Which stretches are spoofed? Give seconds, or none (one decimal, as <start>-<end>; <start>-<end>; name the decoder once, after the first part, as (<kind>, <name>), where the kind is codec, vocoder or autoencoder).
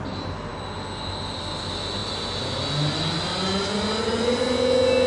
none